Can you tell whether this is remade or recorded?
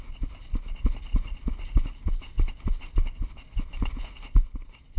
recorded